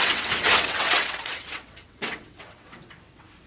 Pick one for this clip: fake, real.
fake